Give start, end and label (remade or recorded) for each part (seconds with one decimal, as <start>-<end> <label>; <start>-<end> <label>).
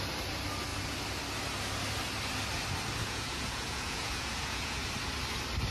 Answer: 0.0-3.0 recorded; 3.0-4.8 remade; 4.8-5.7 recorded